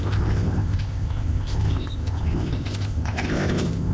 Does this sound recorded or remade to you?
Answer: remade